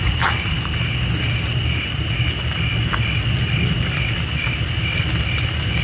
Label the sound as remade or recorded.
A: recorded